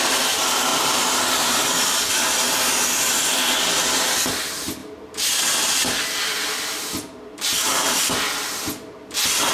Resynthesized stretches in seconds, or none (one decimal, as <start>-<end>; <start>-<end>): 0.7-3.6; 4.8-9.5